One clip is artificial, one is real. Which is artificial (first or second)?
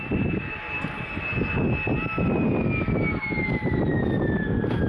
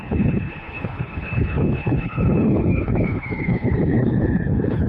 second